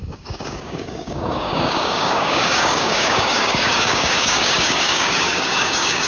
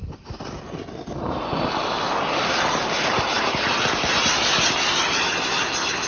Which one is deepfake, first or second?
first